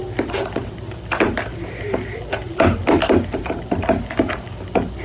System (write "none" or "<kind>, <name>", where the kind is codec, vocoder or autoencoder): none